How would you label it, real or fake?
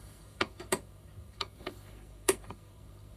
fake